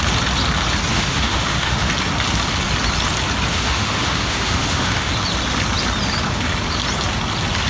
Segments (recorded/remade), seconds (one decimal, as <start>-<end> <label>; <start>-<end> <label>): 0.0-0.9 recorded; 0.9-1.9 remade; 1.9-3.5 recorded; 3.5-5.1 remade; 5.1-7.7 recorded